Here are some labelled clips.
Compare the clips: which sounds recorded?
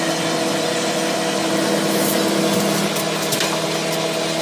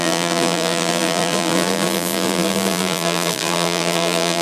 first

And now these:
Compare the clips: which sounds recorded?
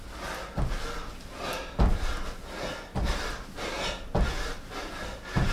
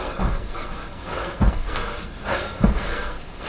first